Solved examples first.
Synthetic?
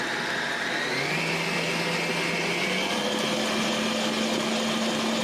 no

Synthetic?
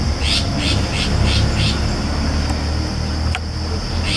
no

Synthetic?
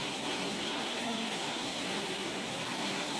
yes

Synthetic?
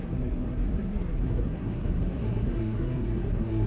yes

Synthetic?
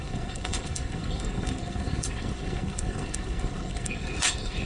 yes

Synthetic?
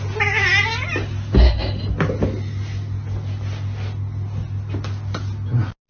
no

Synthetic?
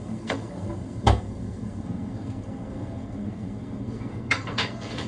yes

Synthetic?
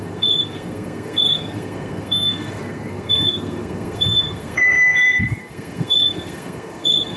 yes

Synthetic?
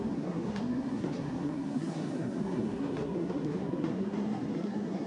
yes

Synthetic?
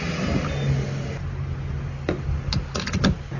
no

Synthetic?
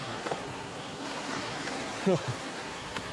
yes